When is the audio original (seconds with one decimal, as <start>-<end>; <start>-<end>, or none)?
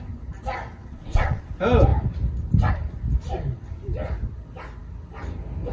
0.0-0.8; 1.4-5.7